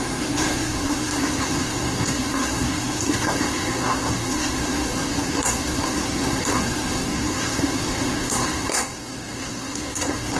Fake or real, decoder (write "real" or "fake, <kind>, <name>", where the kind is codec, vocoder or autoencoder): fake, codec, SNAC